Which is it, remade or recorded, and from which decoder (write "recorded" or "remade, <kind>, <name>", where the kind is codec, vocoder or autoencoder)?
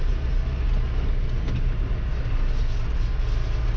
recorded